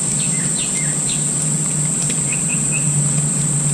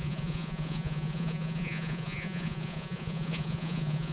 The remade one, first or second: second